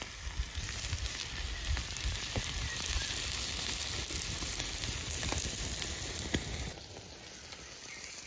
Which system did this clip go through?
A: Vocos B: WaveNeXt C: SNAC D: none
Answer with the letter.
D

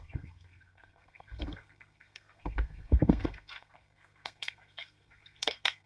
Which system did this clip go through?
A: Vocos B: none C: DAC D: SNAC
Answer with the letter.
D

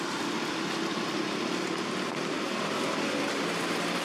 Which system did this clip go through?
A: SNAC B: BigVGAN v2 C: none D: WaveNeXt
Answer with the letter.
C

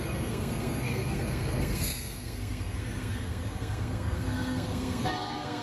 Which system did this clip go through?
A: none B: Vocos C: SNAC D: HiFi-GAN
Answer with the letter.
C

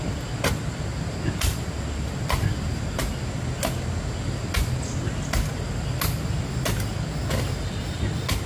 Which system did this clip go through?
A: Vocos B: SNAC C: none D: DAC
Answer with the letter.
C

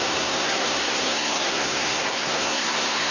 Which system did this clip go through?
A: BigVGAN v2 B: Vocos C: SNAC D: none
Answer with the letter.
C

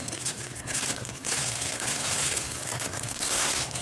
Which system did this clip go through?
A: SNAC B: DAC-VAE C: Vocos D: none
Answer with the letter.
A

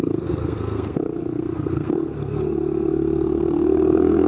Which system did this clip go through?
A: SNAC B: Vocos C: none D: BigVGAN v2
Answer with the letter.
A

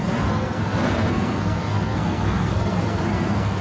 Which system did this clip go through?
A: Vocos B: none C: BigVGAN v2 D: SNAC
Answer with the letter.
D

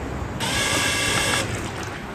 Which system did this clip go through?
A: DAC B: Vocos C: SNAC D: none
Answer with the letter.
D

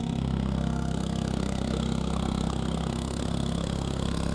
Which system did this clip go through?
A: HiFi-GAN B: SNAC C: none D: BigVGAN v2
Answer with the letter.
B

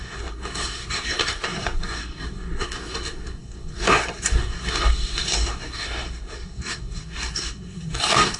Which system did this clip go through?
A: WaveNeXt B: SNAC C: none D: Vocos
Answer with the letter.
B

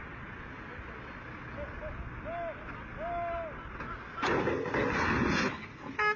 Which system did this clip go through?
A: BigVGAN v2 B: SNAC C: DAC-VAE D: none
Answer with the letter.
D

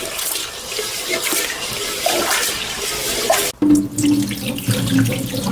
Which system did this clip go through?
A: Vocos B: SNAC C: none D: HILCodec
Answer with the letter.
C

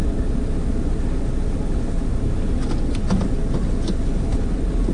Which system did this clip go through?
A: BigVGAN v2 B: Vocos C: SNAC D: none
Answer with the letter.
D